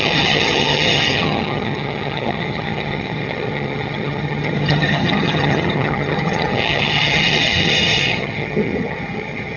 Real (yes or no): no